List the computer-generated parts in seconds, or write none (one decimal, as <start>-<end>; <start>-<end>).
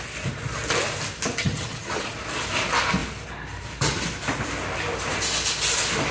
1.4-2.1